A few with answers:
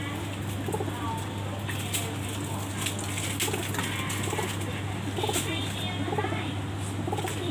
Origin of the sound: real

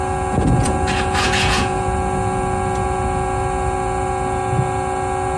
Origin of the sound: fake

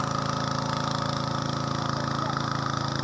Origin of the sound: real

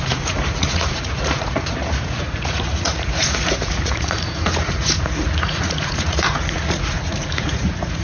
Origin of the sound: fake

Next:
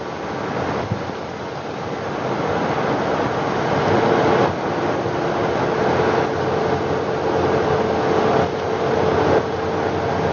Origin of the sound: real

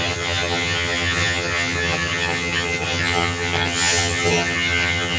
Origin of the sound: fake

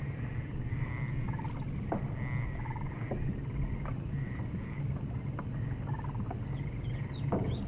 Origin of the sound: real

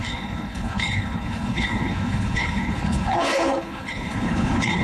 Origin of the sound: fake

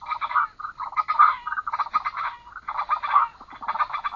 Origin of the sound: real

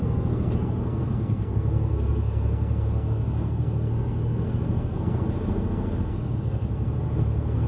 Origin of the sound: fake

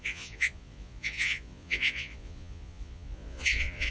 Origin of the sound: fake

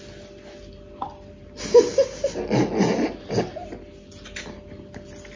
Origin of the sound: real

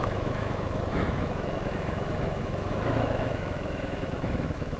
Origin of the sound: fake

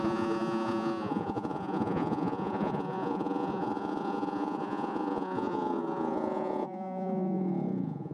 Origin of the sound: fake